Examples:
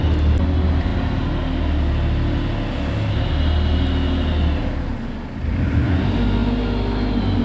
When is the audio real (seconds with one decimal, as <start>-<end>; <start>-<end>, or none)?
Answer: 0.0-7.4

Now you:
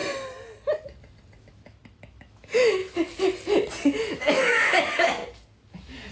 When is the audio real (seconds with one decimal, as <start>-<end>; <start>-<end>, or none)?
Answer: 0.0-1.4; 2.8-4.0; 5.2-6.1

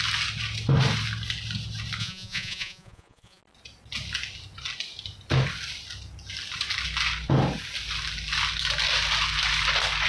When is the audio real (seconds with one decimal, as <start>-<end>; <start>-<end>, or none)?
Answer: 0.0-2.0; 3.4-10.1